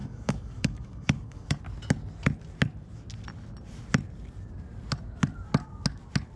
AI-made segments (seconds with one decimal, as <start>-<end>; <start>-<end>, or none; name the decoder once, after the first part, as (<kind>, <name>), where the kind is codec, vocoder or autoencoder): 0.0-1.6 (codec, DAC)